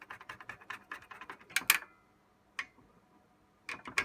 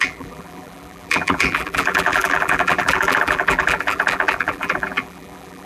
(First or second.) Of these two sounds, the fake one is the second